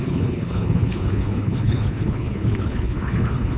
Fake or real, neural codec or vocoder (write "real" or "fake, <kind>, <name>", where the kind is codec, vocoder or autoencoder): fake, codec, HILCodec